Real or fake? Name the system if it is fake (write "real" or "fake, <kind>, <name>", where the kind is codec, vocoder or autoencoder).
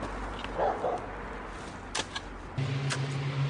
real